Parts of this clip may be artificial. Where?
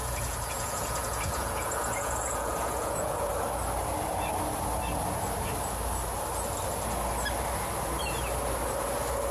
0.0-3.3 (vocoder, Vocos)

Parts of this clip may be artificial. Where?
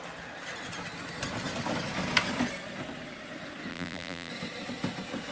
3.7-4.3 (vocoder, BigVGAN v2)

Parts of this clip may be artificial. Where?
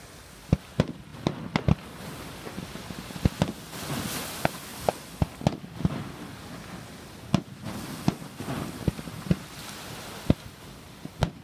none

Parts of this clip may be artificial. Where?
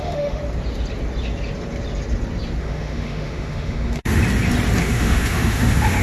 0.0-0.4 (autoencoder, DAC-VAE); 2.6-4.2; 4.8-6.0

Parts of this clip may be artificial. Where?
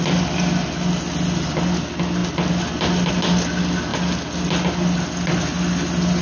none